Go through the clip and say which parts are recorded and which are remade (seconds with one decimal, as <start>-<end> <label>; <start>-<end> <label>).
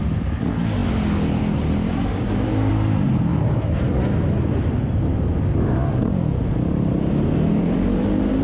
0.0-2.1 recorded; 2.1-2.7 remade; 2.7-8.4 recorded